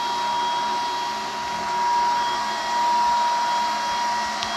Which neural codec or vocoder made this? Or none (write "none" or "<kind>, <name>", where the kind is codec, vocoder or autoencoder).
none